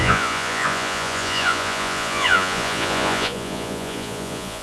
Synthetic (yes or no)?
yes